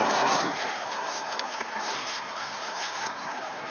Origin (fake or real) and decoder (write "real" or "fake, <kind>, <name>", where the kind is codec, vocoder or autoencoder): fake, codec, SNAC